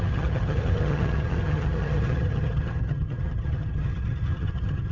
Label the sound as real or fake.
fake